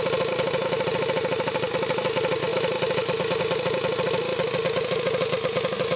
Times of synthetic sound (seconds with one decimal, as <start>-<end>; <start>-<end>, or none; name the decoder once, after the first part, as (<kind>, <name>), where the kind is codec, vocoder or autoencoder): none